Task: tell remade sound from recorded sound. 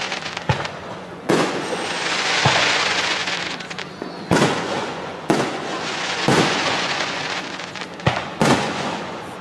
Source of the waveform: remade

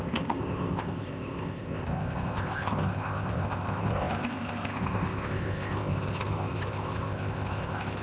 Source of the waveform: remade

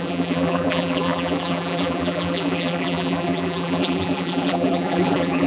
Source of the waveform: remade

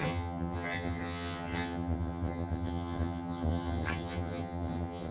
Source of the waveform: remade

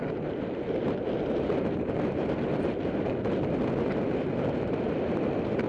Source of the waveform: recorded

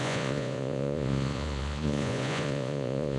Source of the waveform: remade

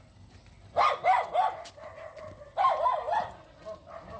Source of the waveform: recorded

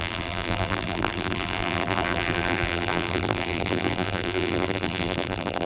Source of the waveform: remade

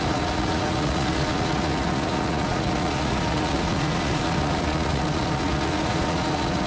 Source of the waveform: remade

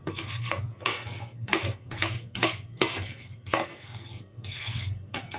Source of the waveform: remade